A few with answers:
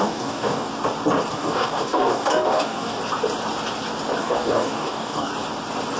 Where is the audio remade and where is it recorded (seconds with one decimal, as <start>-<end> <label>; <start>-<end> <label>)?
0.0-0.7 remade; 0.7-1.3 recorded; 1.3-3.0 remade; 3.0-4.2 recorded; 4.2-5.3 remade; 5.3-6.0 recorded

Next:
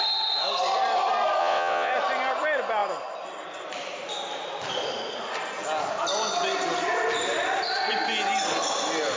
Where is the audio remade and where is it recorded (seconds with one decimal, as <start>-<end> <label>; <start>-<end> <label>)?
0.0-1.4 recorded; 1.4-1.9 remade; 1.9-9.2 recorded

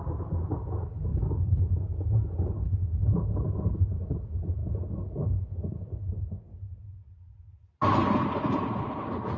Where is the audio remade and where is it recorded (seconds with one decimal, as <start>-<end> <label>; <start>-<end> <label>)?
0.0-1.1 recorded; 1.1-1.6 remade; 1.6-9.4 recorded